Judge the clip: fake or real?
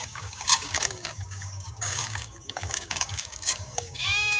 fake